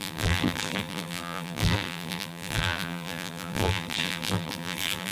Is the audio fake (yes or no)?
yes